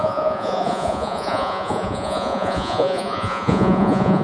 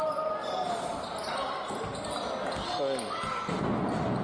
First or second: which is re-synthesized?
first